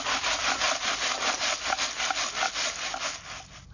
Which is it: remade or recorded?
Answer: recorded